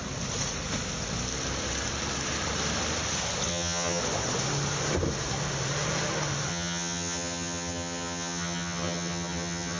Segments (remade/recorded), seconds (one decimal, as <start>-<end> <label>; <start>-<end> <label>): 0.0-3.5 recorded; 3.5-4.0 remade; 4.0-6.5 recorded; 6.5-9.8 remade